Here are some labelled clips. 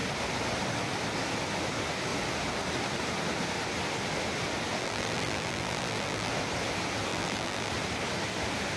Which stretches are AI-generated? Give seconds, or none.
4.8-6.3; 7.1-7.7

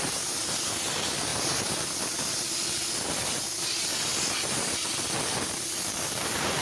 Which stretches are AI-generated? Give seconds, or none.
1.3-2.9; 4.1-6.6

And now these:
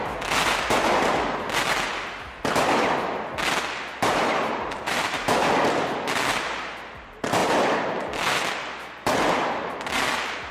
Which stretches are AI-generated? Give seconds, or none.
4.1-5.2

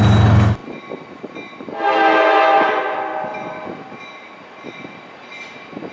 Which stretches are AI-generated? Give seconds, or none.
none